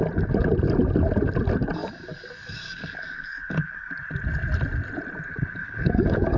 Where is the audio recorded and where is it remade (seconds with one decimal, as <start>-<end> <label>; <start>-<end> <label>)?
0.0-1.8 recorded; 1.8-3.9 remade; 3.9-5.6 recorded; 5.6-6.4 remade